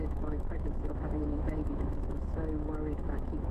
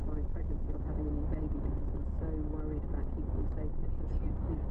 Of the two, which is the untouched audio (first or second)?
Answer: second